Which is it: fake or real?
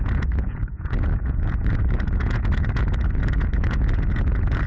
fake